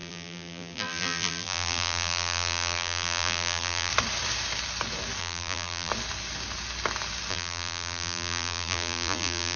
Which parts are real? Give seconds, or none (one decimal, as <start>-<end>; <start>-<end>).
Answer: 3.9-5.2; 5.9-7.3